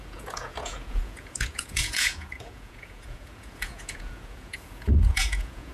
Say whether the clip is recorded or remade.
remade